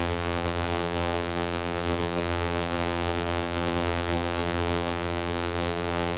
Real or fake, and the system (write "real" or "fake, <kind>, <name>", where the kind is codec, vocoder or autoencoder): fake, vocoder, BigVGAN v2